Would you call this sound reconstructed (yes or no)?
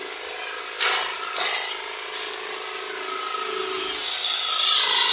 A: no